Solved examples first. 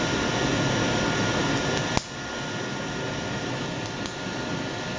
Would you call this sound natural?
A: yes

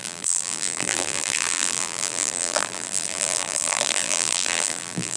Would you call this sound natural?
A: no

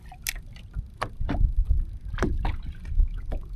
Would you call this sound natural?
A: yes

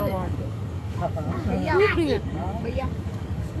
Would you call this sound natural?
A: no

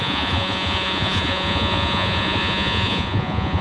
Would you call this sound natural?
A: no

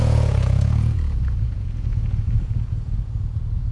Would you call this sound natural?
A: no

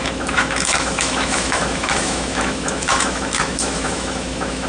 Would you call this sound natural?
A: no